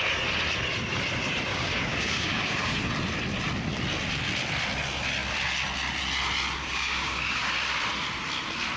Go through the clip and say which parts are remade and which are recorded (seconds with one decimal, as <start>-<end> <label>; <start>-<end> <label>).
0.0-1.5 recorded; 1.5-2.9 remade; 2.9-6.6 recorded; 6.6-7.5 remade; 7.5-8.8 recorded

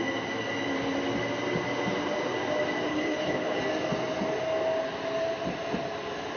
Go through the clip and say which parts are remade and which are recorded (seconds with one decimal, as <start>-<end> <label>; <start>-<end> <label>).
0.0-2.9 recorded; 2.9-3.6 remade; 3.6-6.4 recorded

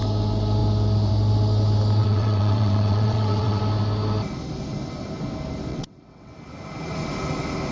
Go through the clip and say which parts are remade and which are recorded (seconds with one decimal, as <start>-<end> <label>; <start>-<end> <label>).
0.0-2.0 recorded; 2.0-3.6 remade; 3.6-5.7 recorded; 5.7-6.3 remade; 6.3-7.7 recorded

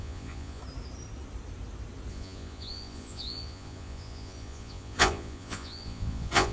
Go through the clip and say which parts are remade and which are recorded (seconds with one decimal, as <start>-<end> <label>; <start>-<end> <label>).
0.0-0.6 remade; 0.6-2.1 recorded; 2.1-6.5 remade

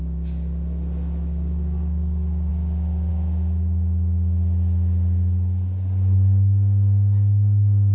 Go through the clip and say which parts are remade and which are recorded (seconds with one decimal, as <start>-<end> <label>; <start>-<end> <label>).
0.0-7.9 recorded

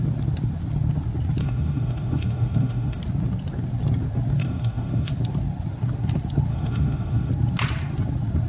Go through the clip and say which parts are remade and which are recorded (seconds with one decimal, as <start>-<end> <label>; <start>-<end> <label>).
0.0-1.4 recorded; 1.4-3.0 remade; 3.0-4.4 recorded; 4.4-5.1 remade; 5.1-6.5 recorded; 6.5-7.3 remade; 7.3-8.5 recorded

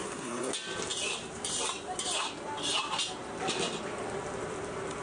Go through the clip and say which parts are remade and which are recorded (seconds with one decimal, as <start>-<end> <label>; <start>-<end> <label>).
0.0-0.5 remade; 0.5-5.0 recorded